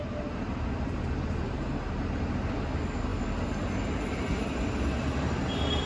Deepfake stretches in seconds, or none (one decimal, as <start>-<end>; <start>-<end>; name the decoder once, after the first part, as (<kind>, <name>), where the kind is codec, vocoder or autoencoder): none